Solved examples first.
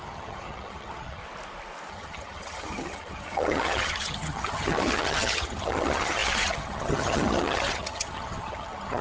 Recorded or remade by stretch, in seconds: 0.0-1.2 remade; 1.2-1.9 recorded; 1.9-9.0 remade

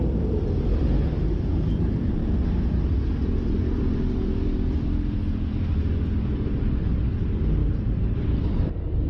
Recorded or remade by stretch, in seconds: 0.0-2.2 remade; 2.2-3.1 recorded; 3.1-9.1 remade

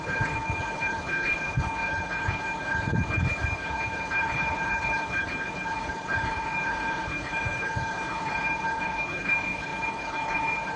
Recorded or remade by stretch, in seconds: 0.0-10.8 remade

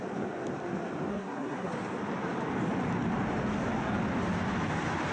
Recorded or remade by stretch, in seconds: 0.0-1.1 recorded; 1.1-1.7 remade; 1.7-5.1 recorded

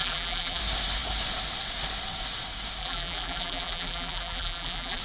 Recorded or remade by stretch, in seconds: 0.0-0.6 remade; 0.6-2.8 recorded; 2.8-5.0 remade

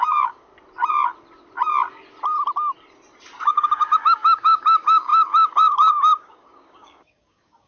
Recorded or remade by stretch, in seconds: 0.0-0.5 remade; 0.5-3.5 recorded; 3.5-7.7 remade

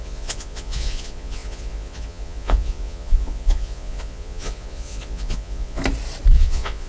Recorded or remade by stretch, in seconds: 0.0-5.8 remade; 5.8-6.3 recorded; 6.3-6.9 remade

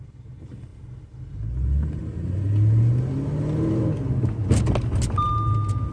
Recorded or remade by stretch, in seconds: 0.0-5.9 recorded